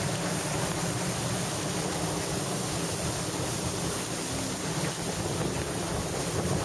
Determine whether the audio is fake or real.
real